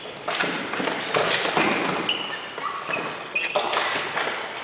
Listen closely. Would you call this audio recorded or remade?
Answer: recorded